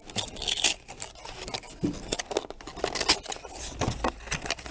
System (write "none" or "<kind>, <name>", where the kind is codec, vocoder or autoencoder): none